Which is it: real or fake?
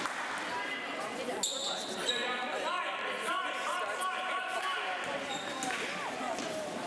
real